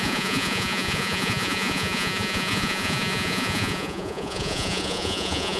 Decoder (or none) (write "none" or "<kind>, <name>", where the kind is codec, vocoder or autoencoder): vocoder, Vocos